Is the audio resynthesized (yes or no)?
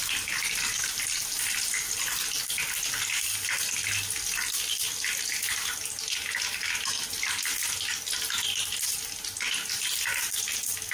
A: no